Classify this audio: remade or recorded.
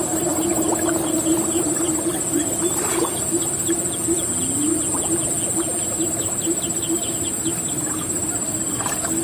recorded